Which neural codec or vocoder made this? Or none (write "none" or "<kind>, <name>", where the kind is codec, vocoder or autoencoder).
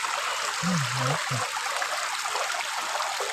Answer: none